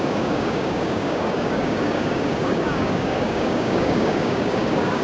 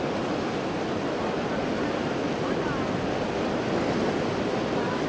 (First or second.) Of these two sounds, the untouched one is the second